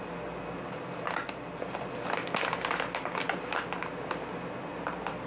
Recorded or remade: recorded